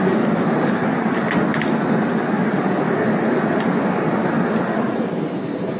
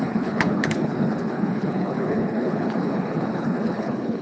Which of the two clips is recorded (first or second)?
first